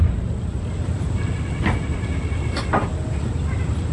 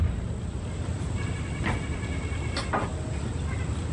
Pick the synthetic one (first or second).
first